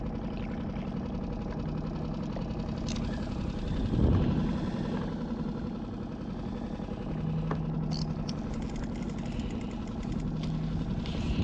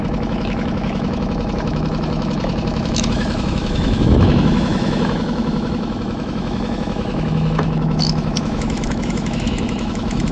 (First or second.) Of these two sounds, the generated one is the second